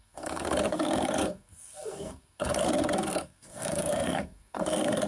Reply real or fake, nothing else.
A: fake